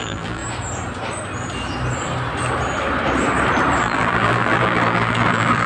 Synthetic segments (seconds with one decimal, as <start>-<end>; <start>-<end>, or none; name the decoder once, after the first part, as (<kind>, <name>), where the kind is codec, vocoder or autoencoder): 0.0-0.4 (vocoder, BigVGAN v2); 3.8-5.7